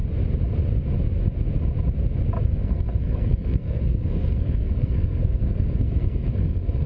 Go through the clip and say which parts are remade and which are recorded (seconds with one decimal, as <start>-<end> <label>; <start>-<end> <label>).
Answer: 0.0-2.4 recorded; 2.4-6.9 remade